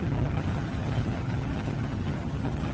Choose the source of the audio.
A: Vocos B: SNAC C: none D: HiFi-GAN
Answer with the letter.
D